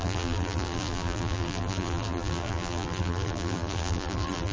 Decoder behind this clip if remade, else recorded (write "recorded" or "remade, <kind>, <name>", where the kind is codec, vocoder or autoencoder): remade, vocoder, BigVGAN v2